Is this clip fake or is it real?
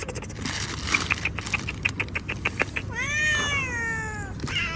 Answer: real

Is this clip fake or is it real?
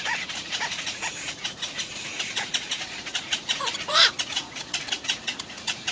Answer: fake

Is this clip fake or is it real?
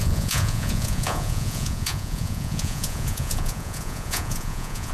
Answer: fake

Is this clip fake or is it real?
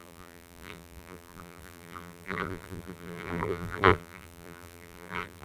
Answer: fake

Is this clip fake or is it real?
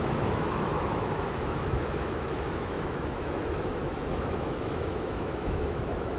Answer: fake